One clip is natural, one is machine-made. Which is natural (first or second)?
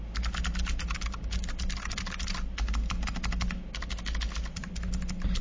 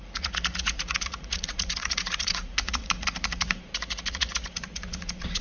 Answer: first